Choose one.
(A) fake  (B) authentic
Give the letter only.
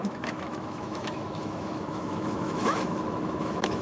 A